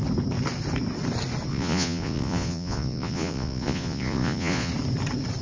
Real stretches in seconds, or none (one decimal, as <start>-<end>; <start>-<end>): 0.0-1.5; 4.7-5.4